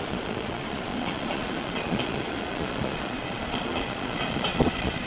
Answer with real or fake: fake